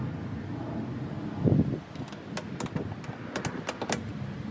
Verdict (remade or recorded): recorded